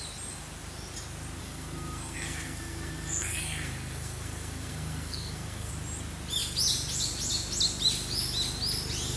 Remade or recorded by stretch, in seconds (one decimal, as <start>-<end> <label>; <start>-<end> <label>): 0.0-1.4 recorded; 1.4-5.7 remade; 5.7-9.2 recorded